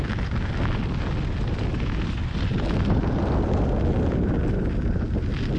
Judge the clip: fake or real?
real